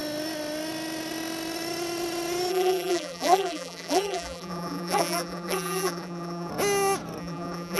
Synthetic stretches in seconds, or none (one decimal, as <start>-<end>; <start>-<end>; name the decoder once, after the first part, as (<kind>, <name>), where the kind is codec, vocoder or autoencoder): 2.5-6.5 (vocoder, BigVGAN v2); 7.2-7.8